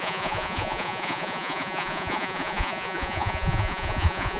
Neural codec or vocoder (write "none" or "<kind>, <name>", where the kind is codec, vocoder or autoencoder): vocoder, Vocos